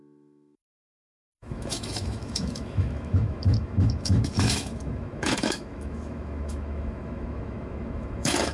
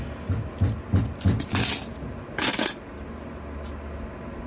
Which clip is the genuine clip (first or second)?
second